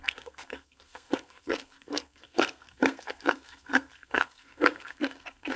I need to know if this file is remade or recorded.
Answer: remade